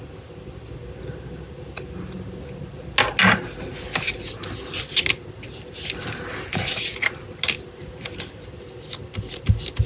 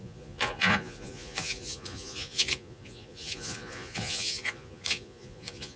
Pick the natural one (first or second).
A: first